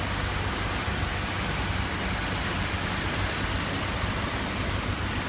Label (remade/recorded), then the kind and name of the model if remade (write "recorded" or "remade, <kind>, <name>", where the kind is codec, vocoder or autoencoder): recorded